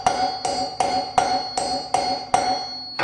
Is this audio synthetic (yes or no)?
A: no